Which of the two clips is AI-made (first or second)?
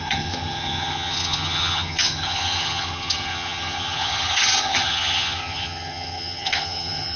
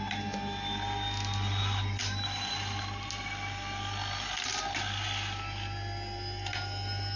first